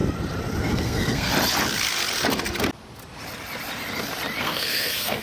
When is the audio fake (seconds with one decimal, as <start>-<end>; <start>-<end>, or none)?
0.6-1.3; 4.4-5.2